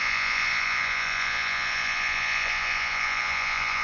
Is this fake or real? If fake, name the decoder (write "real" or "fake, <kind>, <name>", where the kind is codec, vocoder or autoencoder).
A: fake, vocoder, Vocos